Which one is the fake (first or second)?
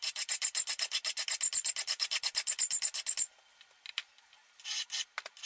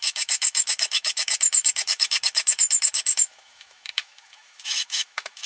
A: second